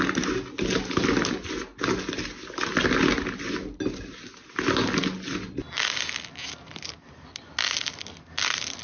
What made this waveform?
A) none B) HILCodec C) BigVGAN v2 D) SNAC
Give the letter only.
A